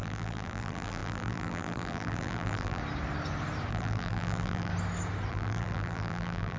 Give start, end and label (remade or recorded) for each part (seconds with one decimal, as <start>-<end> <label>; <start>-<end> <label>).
0.0-2.8 remade; 2.8-3.7 recorded; 3.7-4.7 remade; 4.7-5.3 recorded; 5.3-6.6 remade